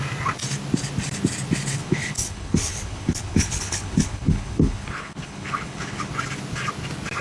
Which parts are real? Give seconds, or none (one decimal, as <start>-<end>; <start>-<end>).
0.0-1.8; 6.1-7.2